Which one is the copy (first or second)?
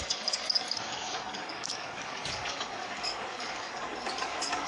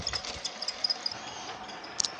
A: first